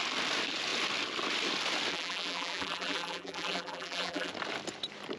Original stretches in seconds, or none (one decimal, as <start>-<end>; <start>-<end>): 0.0-1.9; 4.3-5.2